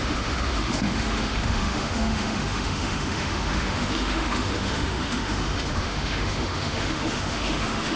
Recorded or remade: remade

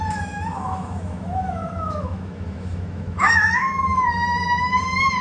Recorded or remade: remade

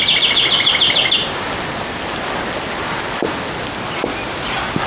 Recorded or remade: recorded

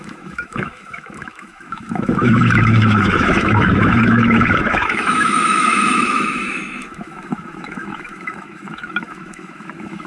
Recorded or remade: remade